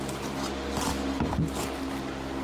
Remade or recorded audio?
recorded